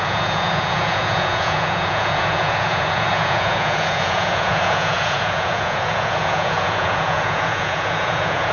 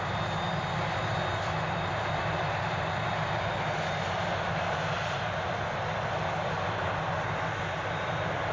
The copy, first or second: first